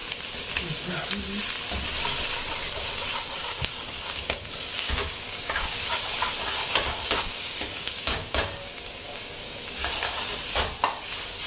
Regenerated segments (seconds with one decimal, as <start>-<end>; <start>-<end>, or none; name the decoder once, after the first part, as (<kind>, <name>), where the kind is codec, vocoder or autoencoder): 3.4-5.8 (codec, DAC); 6.5-10.4